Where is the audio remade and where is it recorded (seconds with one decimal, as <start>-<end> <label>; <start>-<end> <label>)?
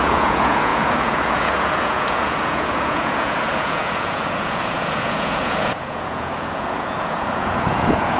0.0-8.2 remade